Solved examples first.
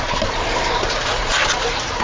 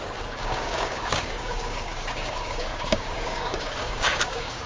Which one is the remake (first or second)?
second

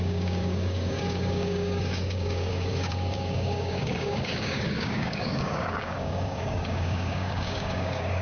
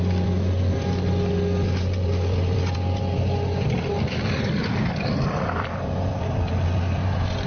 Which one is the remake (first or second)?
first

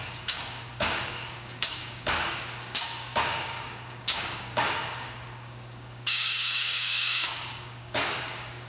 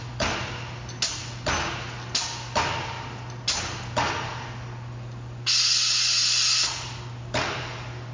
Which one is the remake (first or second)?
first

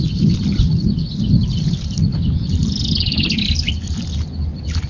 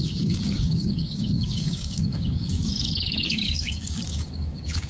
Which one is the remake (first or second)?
second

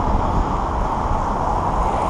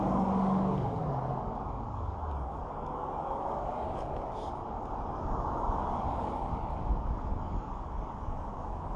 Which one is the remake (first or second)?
second